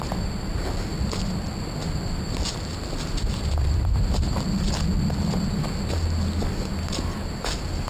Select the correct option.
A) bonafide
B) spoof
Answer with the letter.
A